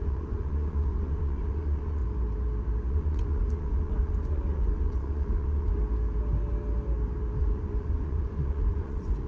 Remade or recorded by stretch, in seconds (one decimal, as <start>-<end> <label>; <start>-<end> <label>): 0.0-2.0 remade; 2.0-2.9 recorded; 2.9-5.8 remade; 5.8-7.4 recorded; 7.4-9.3 remade

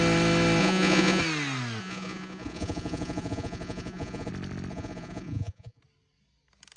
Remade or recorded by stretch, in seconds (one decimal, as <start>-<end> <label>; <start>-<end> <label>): 0.0-0.6 recorded; 0.6-1.2 remade; 1.2-1.8 recorded; 1.8-4.3 remade; 4.3-4.7 recorded; 4.7-5.8 remade; 5.8-6.8 recorded

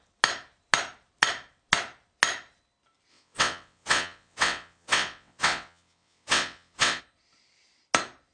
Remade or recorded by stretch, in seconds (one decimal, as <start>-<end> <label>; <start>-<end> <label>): 0.0-3.1 recorded; 3.1-7.0 remade; 7.0-8.3 recorded

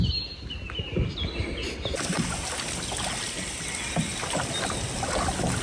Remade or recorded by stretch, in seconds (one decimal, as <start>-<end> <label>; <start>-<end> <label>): 0.0-5.6 recorded

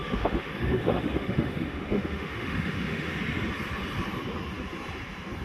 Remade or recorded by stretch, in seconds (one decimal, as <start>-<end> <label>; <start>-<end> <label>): 0.0-3.2 remade; 3.2-5.4 recorded

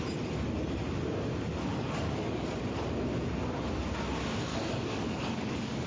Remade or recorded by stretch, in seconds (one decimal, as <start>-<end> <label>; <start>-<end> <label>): 0.0-1.7 recorded; 1.7-2.6 remade; 2.6-4.5 recorded; 4.5-5.9 remade

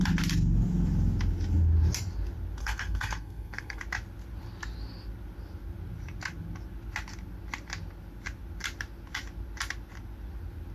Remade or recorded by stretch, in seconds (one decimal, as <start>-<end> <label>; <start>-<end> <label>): 0.0-2.6 recorded; 2.6-3.8 remade; 3.8-10.7 recorded

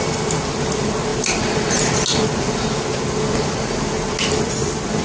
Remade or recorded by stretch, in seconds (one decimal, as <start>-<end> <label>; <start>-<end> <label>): 0.0-5.0 recorded